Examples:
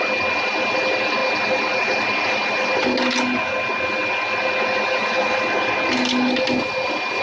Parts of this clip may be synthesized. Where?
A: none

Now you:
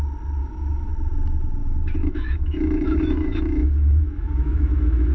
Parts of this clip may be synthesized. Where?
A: 0.4-0.9 (autoencoder, DAC-VAE); 1.6-5.1

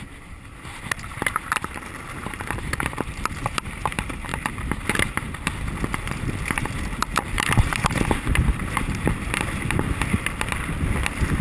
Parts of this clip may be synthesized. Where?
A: 0.0-11.4 (vocoder, BigVGAN v2)

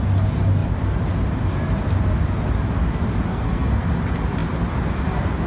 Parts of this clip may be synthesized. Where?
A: 3.3-3.9 (codec, SNAC)

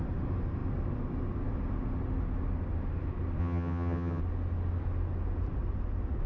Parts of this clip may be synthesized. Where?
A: 3.4-4.2 (vocoder, HiFi-GAN)